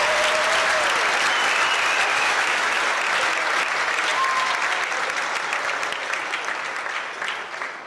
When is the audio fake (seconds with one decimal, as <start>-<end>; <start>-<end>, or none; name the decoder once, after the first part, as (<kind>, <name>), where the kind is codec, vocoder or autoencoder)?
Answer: 2.1-2.8 (autoencoder, DAC-VAE)